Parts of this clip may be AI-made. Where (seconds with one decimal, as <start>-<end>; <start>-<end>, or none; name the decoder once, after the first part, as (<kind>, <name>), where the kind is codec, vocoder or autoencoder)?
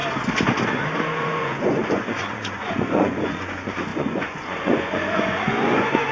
1.0-6.1 (vocoder, Vocos)